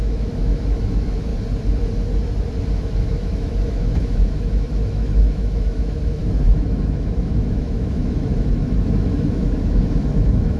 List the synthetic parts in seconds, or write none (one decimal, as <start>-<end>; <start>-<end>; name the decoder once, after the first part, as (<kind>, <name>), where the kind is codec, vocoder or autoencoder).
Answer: 0.0-1.3 (autoencoder, DAC-VAE); 2.7-10.6